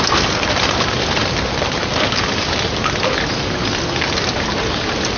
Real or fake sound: real